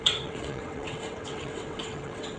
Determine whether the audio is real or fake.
fake